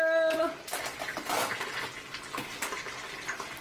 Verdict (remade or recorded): recorded